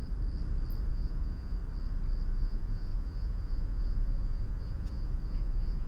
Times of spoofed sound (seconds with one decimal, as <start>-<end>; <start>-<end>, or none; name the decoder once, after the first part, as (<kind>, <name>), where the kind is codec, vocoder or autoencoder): 0.9-1.6 (vocoder, Vocos); 2.3-5.9